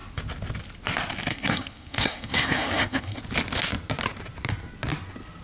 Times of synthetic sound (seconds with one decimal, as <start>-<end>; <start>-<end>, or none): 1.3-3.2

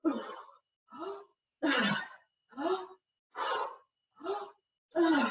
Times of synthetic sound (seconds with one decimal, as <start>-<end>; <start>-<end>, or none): none

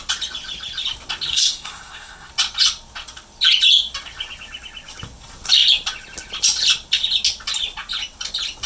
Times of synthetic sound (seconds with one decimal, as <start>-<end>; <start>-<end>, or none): 1.3-2.3